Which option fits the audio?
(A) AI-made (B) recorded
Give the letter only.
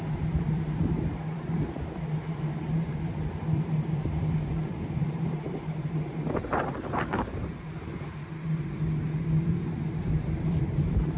A